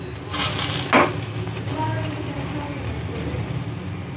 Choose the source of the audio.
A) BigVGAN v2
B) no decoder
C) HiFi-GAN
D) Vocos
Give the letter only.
B